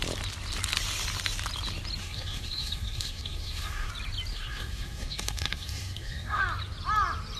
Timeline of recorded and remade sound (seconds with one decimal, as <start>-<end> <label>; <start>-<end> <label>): 0.0-2.0 recorded; 2.0-3.9 remade; 3.9-4.3 recorded; 4.3-6.4 remade; 6.4-7.4 recorded